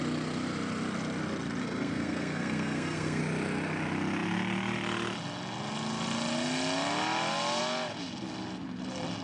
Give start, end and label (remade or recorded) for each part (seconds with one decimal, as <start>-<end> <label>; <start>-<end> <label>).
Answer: 0.0-1.6 recorded; 1.6-3.2 remade; 3.2-9.2 recorded